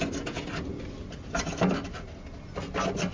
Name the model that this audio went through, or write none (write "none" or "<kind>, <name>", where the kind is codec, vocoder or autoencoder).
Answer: none